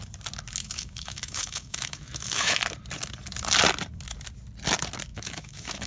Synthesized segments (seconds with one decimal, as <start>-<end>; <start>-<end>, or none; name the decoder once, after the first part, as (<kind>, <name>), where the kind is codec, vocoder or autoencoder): 0.6-2.6 (autoencoder, DAC-VAE); 5.1-5.9